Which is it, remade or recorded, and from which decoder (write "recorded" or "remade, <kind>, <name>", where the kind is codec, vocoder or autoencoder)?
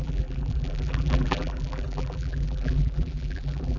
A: remade, vocoder, BigVGAN v2